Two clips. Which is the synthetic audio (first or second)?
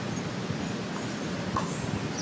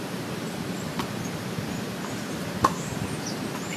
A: second